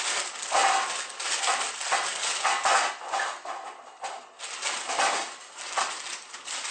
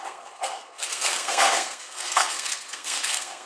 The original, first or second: first